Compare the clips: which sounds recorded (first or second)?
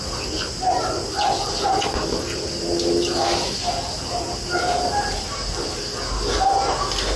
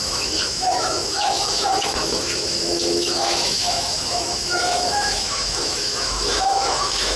first